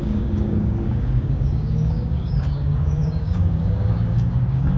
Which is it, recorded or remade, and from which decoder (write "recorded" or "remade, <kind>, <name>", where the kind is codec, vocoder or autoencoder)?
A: remade, codec, DAC